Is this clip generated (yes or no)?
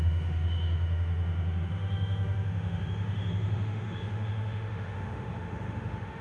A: yes